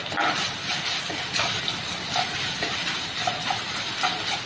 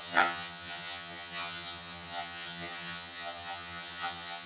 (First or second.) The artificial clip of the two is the second